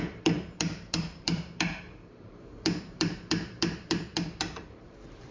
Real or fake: fake